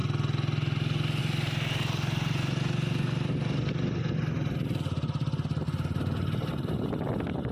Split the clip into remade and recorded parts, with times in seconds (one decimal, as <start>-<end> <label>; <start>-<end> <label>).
0.0-7.5 recorded

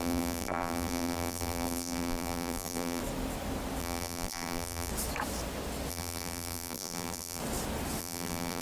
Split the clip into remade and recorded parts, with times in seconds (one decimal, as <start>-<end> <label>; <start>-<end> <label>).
0.0-3.0 remade; 3.0-3.8 recorded; 3.8-4.9 remade; 4.9-5.9 recorded; 5.9-7.4 remade; 7.4-8.0 recorded; 8.0-8.6 remade

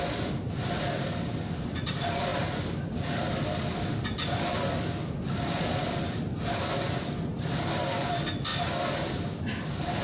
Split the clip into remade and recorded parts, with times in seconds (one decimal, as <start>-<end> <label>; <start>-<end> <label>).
0.0-8.5 recorded; 8.5-10.0 remade

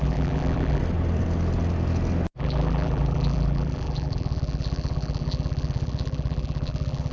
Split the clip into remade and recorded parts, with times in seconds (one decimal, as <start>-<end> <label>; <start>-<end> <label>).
0.0-0.8 remade; 0.8-2.4 recorded; 2.4-7.1 remade

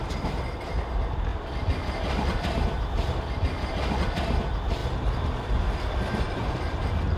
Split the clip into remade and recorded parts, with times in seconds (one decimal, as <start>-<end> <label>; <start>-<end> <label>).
0.0-7.2 recorded